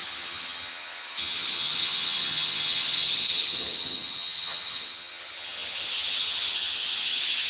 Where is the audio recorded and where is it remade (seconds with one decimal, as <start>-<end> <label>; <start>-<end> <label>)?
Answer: 0.0-7.5 remade